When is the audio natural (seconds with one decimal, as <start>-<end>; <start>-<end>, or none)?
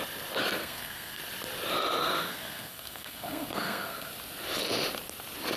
0.0-0.6; 1.2-2.0; 4.1-5.6